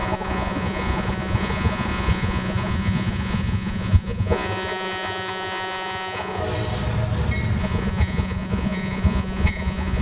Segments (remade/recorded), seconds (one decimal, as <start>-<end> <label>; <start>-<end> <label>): 0.0-6.4 remade; 6.4-7.6 recorded; 7.6-10.0 remade